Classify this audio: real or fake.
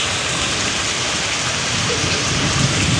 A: fake